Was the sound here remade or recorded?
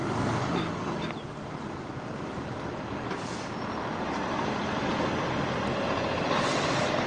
remade